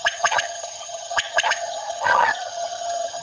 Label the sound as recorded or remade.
remade